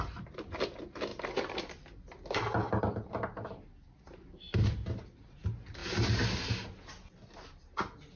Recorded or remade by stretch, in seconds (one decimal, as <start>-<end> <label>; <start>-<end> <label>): 0.0-8.2 recorded